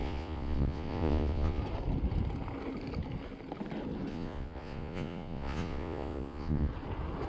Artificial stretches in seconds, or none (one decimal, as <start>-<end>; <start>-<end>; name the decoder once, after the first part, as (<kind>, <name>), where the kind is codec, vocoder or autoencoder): 0.0-1.6 (vocoder, Vocos); 4.1-6.7